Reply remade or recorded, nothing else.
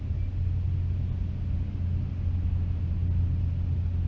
recorded